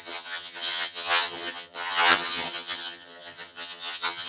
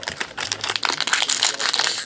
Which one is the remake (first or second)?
first